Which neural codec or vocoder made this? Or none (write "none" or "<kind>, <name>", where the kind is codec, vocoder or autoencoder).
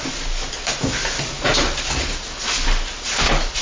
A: none